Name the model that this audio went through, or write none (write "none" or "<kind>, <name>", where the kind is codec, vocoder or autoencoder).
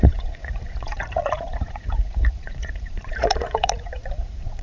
vocoder, Vocos